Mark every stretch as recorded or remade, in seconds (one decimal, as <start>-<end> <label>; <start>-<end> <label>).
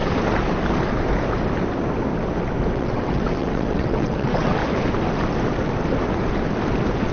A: 0.0-2.7 recorded; 2.7-4.6 remade; 4.6-7.1 recorded